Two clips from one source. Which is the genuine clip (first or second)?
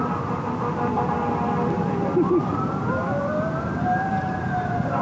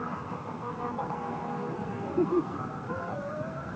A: first